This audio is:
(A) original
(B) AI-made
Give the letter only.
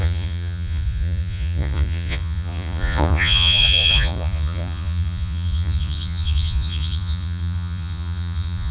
B